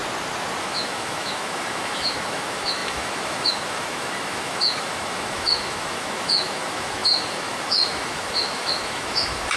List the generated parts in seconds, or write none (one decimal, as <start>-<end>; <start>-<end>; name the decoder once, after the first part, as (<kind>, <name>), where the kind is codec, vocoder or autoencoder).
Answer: 0.6-9.6 (autoencoder, DAC-VAE)